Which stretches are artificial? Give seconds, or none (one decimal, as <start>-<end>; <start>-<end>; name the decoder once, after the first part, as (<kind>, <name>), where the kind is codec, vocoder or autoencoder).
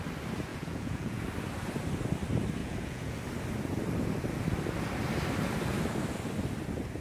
0.5-1.3 (vocoder, Vocos); 2.6-3.2